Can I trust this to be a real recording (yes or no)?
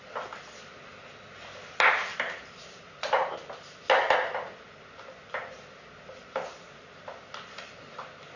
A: yes